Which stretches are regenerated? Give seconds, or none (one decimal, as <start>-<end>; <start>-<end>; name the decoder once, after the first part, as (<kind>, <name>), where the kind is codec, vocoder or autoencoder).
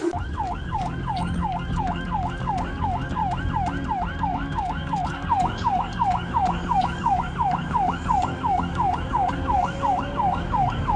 0.0-3.2 (codec, DAC); 4.2-11.0